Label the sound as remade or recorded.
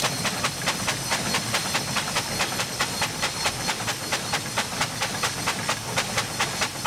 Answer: recorded